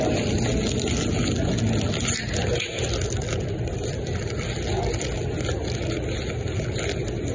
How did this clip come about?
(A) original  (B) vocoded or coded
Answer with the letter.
A